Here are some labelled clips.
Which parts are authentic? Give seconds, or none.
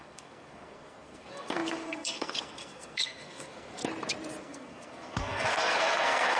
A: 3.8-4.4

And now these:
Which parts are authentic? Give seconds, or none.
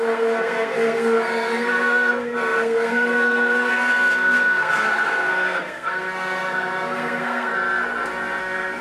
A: 7.5-8.4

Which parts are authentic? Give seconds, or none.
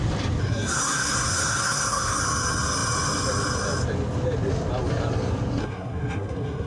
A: 0.0-0.4; 2.2-5.6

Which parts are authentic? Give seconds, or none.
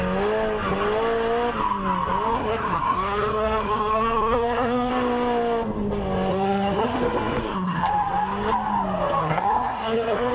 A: 0.0-2.3; 4.9-6.3; 7.9-9.2